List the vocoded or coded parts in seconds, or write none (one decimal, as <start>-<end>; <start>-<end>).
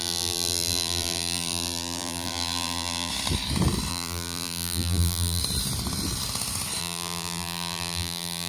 0.0-3.1; 3.9-5.4; 6.8-8.5